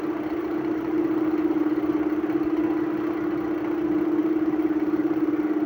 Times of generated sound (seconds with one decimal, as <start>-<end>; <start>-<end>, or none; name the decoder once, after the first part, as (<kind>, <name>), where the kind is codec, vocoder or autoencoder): 0.4-1.6 (vocoder, BigVGAN v2); 4.2-5.3